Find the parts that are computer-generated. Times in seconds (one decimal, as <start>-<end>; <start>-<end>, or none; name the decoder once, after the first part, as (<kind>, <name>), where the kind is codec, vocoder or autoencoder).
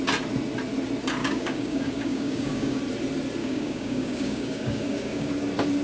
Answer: 1.2-2.8 (codec, DAC); 3.4-5.3